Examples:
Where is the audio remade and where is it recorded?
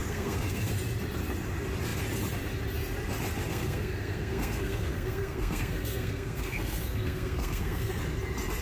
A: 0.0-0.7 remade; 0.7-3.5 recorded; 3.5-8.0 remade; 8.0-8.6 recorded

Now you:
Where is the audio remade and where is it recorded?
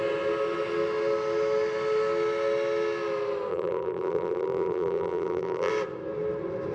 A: 0.0-3.5 recorded; 3.5-5.7 remade; 5.7-6.7 recorded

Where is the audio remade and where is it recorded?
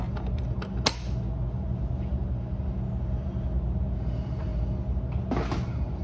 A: 0.0-6.0 recorded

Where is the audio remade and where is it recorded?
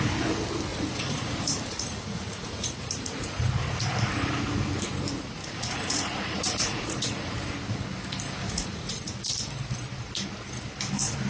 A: 0.0-0.7 recorded; 0.7-3.5 remade; 3.5-5.4 recorded; 5.4-7.3 remade; 7.3-8.4 recorded; 8.4-8.9 remade; 8.9-11.3 recorded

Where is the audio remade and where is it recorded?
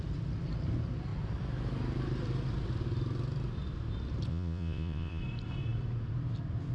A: 0.0-4.3 recorded; 4.3-5.2 remade; 5.2-6.7 recorded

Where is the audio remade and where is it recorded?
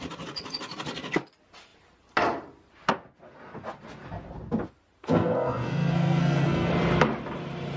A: 0.0-5.0 recorded; 5.0-6.7 remade; 6.7-7.8 recorded